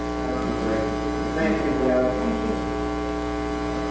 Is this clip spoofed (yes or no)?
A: no